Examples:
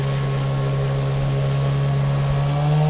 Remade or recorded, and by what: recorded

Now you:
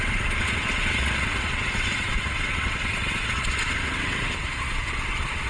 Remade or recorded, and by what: remade, vocoder, WaveNeXt